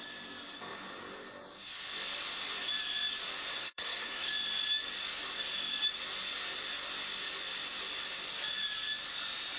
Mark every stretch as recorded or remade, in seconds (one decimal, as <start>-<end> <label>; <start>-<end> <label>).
0.0-3.5 recorded; 3.5-4.3 remade; 4.3-9.6 recorded